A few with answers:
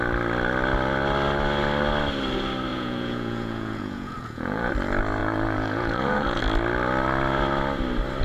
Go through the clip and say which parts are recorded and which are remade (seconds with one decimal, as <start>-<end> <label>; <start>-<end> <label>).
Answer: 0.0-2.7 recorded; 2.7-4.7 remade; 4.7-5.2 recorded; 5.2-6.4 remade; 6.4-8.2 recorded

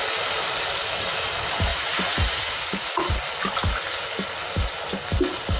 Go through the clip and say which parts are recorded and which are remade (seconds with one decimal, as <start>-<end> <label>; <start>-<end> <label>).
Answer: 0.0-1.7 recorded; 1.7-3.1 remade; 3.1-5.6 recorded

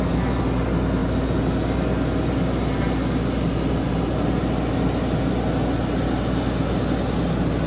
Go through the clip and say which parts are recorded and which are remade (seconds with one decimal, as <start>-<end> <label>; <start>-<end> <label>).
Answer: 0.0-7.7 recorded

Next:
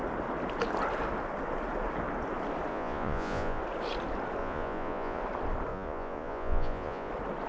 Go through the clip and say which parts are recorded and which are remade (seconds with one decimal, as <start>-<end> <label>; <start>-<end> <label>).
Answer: 0.0-2.7 recorded; 2.7-3.6 remade; 3.6-4.4 recorded; 4.4-5.2 remade; 5.2-5.7 recorded; 5.7-7.1 remade; 7.1-7.5 recorded

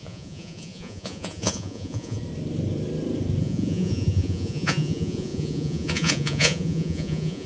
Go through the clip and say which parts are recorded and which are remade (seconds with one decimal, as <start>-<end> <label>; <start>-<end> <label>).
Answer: 0.0-2.2 remade; 2.2-3.4 recorded; 3.4-7.5 remade

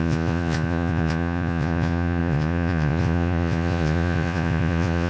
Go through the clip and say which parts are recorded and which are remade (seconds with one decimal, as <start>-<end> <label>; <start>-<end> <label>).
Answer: 0.0-5.1 remade